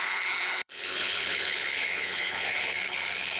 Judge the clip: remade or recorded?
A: remade